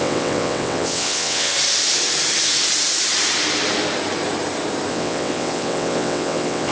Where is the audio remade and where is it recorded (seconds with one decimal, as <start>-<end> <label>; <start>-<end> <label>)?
0.0-1.5 remade; 1.5-4.9 recorded; 4.9-6.7 remade